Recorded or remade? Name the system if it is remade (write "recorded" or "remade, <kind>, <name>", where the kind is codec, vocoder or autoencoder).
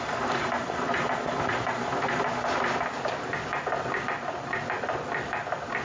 recorded